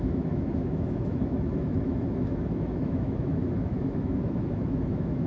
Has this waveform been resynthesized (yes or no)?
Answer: yes